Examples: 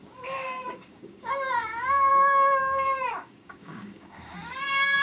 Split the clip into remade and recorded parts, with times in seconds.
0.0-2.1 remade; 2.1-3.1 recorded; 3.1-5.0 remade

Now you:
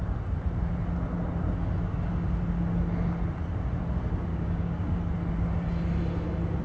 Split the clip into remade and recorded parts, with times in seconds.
0.0-4.3 recorded; 4.3-5.0 remade; 5.0-6.6 recorded

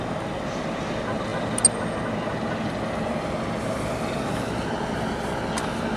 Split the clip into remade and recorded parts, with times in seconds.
0.0-6.0 recorded

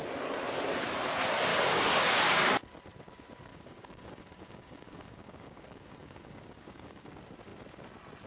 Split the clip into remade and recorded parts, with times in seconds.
0.0-1.5 recorded; 1.5-2.5 remade; 2.5-3.5 recorded; 3.5-7.1 remade; 7.1-8.3 recorded

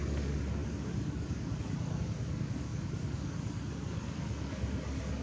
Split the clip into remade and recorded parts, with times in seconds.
0.0-5.2 remade